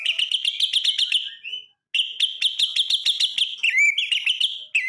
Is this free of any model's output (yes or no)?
yes